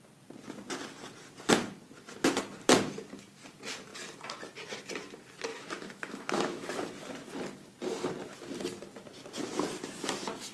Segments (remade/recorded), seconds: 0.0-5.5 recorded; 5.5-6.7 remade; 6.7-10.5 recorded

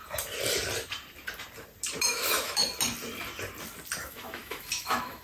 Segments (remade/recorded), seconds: 0.0-2.0 recorded; 2.0-2.6 remade; 2.6-4.0 recorded; 4.0-5.2 remade

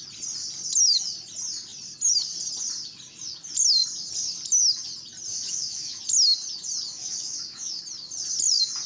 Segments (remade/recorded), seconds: 0.0-5.3 recorded; 5.3-6.0 remade; 6.0-7.0 recorded; 7.0-7.8 remade; 7.8-8.9 recorded

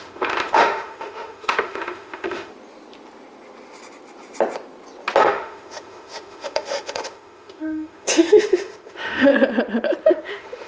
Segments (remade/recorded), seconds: 0.0-2.5 remade; 2.5-5.2 recorded; 5.2-9.3 remade; 9.3-10.0 recorded; 10.0-10.7 remade

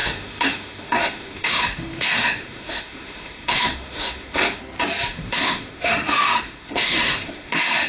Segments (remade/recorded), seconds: 0.0-4.6 remade; 4.6-5.1 recorded; 5.1-7.9 remade